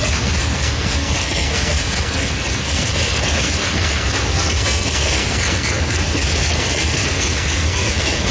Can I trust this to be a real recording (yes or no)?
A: no